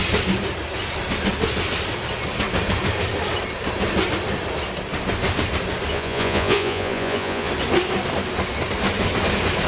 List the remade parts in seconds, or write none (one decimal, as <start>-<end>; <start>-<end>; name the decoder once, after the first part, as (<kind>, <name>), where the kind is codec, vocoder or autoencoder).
5.9-7.5 (vocoder, Vocos)